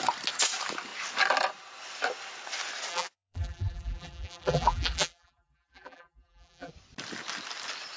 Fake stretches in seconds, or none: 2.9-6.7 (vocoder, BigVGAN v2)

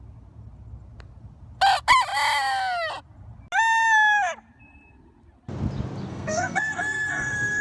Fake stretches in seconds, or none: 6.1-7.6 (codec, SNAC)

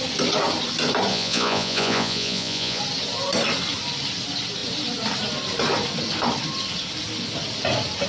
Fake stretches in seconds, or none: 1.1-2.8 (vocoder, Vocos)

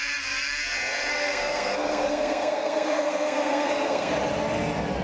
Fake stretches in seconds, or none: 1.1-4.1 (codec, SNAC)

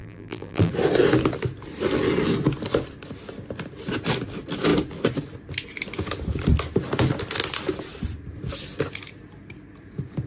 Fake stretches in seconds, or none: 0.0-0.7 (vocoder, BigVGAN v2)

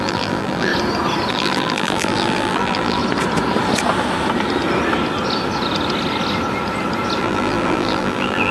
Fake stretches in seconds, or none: 0.0-0.7 (vocoder, BigVGAN v2); 1.3-3.0; 7.2-8.5

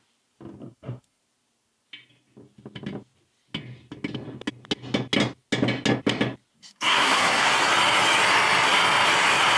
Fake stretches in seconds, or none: 0.6-1.2 (codec, SNAC); 6.5-7.5